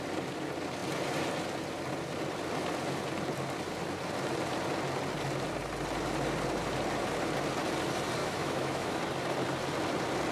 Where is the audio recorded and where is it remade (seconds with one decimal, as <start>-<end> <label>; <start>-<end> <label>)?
0.0-8.2 recorded; 8.2-9.0 remade; 9.0-10.3 recorded